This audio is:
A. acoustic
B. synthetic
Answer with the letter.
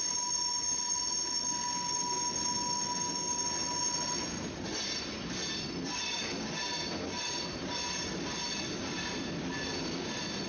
A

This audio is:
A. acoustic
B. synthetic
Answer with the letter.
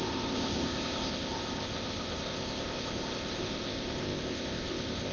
B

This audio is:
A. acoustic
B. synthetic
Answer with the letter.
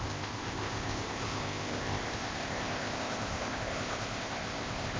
B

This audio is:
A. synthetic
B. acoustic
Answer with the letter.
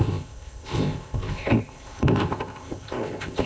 A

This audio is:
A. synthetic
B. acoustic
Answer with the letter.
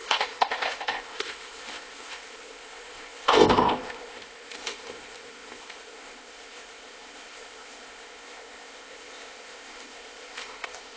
A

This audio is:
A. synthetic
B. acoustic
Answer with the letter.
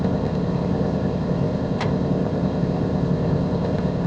A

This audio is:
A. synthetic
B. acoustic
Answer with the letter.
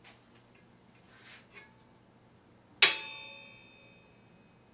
B